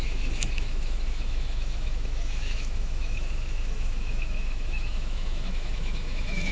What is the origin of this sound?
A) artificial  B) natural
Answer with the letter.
A